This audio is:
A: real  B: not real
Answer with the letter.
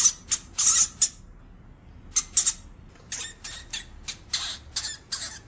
A